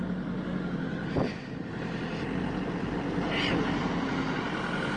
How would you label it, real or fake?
real